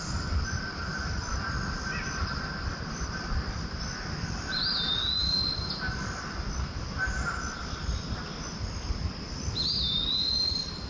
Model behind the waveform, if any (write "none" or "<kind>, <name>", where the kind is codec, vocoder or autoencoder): none